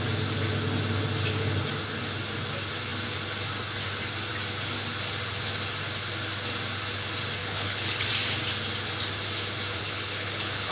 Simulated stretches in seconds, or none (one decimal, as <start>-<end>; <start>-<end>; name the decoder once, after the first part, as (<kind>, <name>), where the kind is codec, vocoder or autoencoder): 7.4-8.1 (codec, HILCodec); 9.8-10.7